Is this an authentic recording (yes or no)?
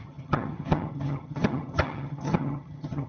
no